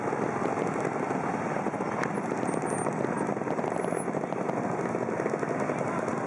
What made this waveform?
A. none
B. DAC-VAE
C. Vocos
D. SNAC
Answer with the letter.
A